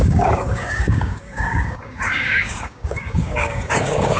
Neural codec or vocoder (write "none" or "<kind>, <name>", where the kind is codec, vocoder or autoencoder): codec, DAC